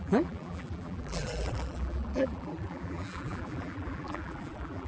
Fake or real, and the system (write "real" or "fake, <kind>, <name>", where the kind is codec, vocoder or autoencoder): fake, vocoder, BigVGAN v2